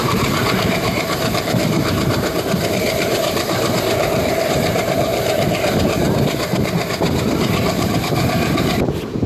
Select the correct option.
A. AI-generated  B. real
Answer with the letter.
A